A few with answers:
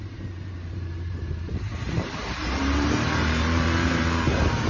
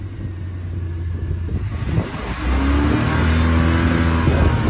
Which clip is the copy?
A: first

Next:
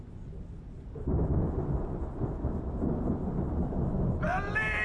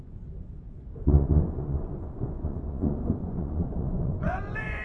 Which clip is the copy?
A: second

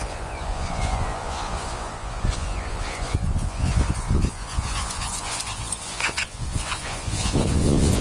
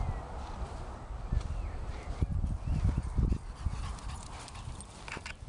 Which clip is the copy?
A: first